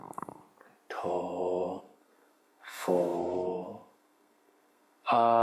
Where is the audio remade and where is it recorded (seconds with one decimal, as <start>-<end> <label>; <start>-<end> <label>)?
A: 0.0-0.4 remade; 0.4-1.8 recorded; 1.8-5.4 remade